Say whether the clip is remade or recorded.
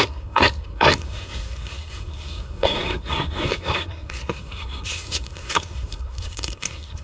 remade